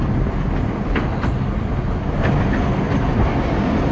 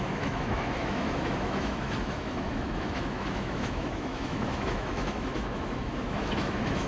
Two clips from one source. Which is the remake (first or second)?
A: second